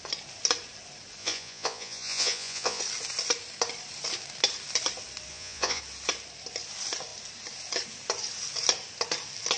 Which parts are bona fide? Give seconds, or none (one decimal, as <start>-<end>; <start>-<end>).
0.0-1.2; 2.8-5.3; 5.8-9.6